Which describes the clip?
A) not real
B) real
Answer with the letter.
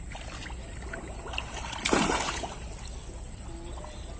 B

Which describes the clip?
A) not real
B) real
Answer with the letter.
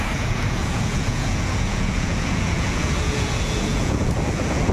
A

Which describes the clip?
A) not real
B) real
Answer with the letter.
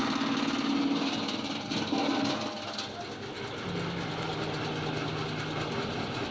B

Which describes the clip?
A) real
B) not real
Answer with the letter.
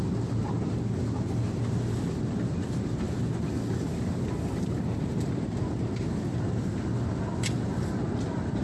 A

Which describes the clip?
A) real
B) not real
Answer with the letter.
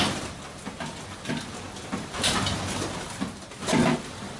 A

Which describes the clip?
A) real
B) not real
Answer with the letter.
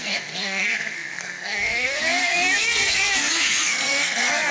B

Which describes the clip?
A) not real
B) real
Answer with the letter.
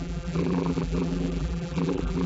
A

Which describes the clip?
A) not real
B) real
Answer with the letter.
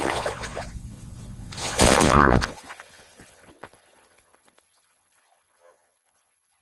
A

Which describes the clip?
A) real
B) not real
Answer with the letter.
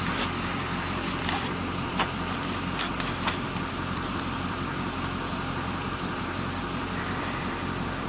B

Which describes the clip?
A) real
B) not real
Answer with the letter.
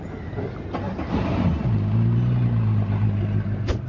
A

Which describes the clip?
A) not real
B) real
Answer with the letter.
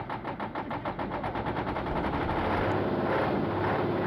B